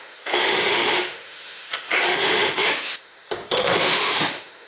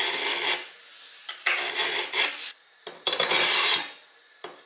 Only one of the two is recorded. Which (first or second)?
second